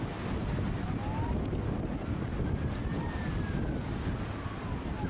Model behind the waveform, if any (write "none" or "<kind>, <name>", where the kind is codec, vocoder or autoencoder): none